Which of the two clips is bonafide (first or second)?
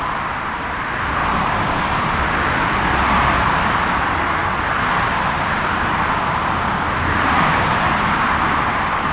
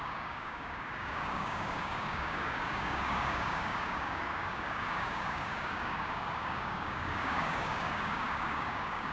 first